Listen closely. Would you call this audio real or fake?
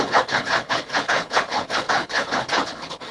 fake